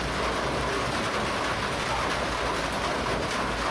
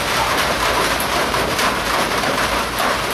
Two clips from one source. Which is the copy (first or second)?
second